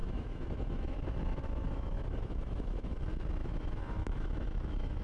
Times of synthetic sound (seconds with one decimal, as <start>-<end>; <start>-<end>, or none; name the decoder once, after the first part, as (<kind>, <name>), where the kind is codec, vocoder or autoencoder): 0.0-3.0 (autoencoder, DAC-VAE); 3.4-5.0